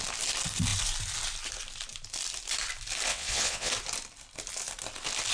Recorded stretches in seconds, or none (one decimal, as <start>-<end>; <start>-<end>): 0.0-3.1; 3.7-5.3